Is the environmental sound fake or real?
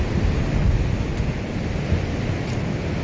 real